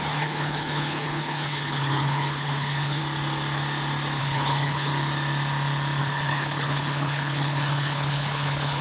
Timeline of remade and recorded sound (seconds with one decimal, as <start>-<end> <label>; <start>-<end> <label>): 0.0-3.0 remade; 3.0-4.2 recorded; 4.2-4.9 remade; 4.9-6.0 recorded; 6.0-8.8 remade